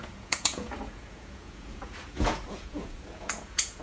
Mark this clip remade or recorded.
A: remade